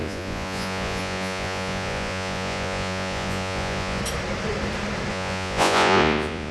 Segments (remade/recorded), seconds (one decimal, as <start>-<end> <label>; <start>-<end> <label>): 0.0-4.0 remade; 4.0-5.1 recorded; 5.1-6.5 remade